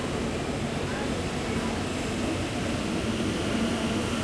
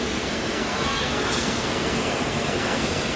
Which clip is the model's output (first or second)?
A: second